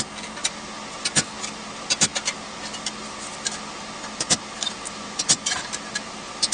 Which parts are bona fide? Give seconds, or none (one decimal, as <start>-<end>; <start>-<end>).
0.0-5.0; 5.6-6.5